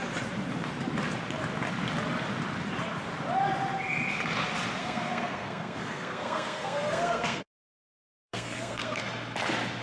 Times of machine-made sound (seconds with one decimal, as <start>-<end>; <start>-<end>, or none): 4.8-9.0